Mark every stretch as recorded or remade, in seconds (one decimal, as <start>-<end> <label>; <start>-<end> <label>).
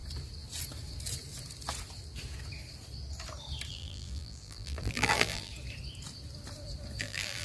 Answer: 0.0-3.7 recorded; 3.7-5.5 remade; 5.5-7.0 recorded; 7.0-7.4 remade